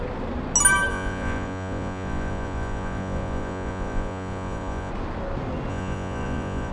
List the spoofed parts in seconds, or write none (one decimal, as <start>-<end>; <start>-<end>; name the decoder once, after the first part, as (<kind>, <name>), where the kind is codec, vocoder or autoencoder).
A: 0.9-4.9 (vocoder, Vocos); 5.7-6.7